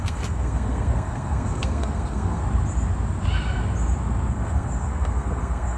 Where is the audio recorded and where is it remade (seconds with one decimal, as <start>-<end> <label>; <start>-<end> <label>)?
0.0-2.4 remade; 2.4-4.3 recorded; 4.3-5.8 remade